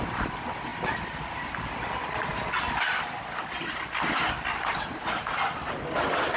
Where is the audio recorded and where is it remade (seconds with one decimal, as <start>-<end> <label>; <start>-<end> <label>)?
0.0-6.4 recorded